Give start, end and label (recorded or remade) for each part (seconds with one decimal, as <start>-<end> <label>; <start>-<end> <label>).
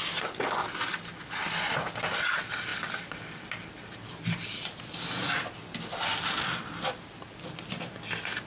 0.0-8.5 recorded